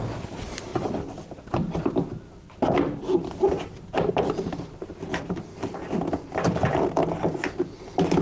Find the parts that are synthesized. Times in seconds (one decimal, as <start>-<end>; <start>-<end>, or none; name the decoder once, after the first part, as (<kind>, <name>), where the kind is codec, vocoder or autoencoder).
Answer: none